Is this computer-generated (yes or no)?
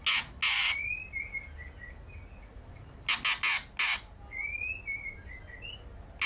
no